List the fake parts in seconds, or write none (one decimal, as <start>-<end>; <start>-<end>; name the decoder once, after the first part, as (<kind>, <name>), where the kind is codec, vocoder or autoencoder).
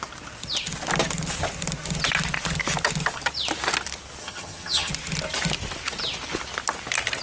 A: 4.2-4.9 (vocoder, HiFi-GAN)